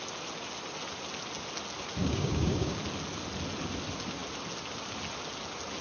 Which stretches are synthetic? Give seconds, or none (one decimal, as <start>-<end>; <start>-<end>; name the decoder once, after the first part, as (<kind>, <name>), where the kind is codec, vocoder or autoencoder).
2.0-2.8 (codec, DAC)